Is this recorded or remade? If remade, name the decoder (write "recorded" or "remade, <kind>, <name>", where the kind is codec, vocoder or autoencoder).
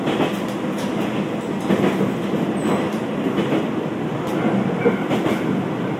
recorded